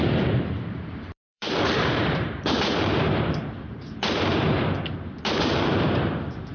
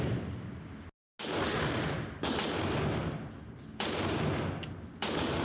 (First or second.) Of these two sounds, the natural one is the second